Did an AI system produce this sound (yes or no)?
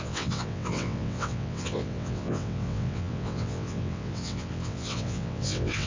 yes